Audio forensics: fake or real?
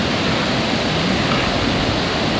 real